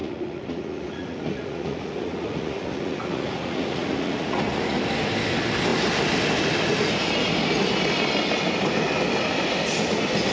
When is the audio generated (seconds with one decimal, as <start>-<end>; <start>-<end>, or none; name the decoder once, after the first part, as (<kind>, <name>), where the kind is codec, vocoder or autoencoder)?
0.0-4.8 (vocoder, Vocos)